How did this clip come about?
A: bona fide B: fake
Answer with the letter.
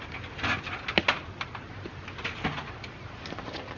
A